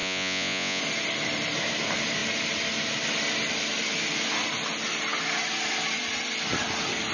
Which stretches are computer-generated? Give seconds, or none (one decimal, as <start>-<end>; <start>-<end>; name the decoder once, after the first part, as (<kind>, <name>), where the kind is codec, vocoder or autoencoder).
0.0-0.8 (vocoder, Vocos)